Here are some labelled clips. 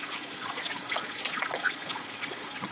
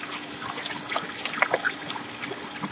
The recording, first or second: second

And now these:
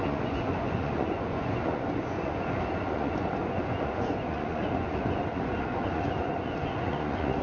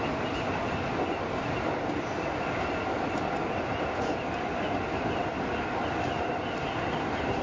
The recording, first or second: second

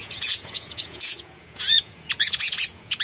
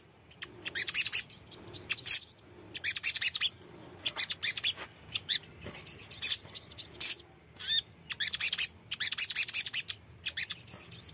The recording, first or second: second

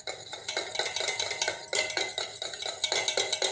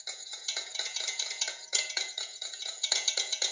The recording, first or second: first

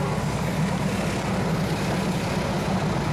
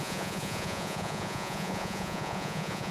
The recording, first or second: first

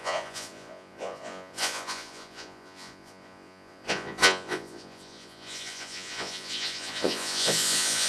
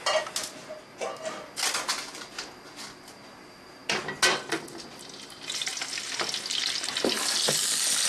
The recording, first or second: second